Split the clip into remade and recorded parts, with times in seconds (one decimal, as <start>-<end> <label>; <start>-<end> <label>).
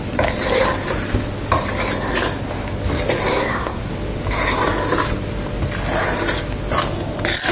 0.0-3.3 recorded; 3.3-3.9 remade; 3.9-7.5 recorded